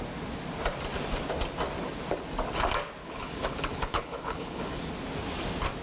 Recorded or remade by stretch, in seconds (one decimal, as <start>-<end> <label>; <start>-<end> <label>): 0.0-3.0 recorded; 3.0-4.9 remade; 4.9-5.8 recorded